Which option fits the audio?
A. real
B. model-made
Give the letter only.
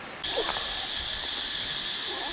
A